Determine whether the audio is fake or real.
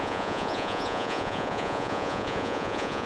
fake